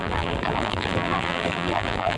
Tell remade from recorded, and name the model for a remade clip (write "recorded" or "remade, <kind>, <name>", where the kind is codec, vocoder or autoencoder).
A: remade, vocoder, BigVGAN v2